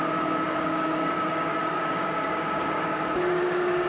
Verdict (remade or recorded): remade